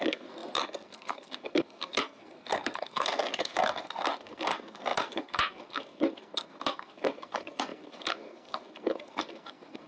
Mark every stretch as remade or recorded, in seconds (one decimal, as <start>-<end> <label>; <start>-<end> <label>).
0.0-9.9 remade